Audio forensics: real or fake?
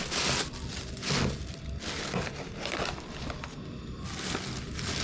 real